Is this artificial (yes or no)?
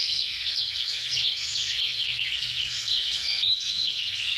yes